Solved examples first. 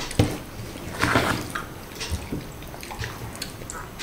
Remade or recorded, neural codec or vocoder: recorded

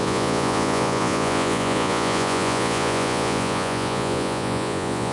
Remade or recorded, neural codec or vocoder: remade, vocoder, Vocos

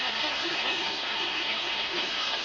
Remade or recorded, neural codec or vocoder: remade, codec, SNAC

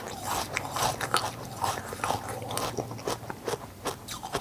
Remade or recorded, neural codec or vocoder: recorded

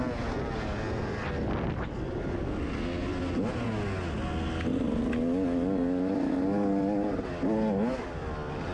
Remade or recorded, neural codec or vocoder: recorded